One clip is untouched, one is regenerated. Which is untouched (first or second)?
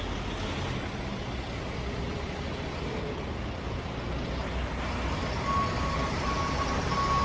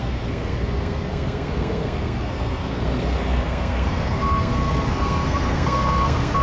first